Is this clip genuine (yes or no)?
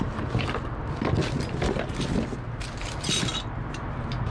yes